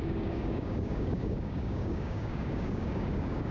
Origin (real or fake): fake